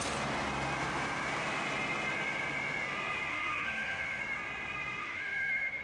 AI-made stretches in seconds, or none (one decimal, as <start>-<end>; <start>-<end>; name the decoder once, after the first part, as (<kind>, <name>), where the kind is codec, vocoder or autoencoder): 3.3-4.2 (autoencoder, DAC-VAE); 5.0-5.8